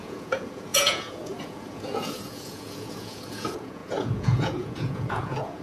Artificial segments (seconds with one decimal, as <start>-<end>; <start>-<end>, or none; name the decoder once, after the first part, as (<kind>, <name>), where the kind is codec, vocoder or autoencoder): 0.0-5.6 (vocoder, Vocos)